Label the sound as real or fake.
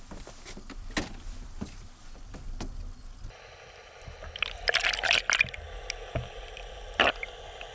real